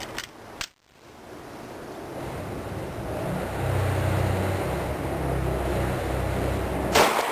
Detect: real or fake real